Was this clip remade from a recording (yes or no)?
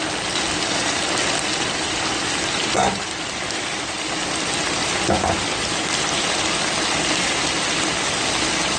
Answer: no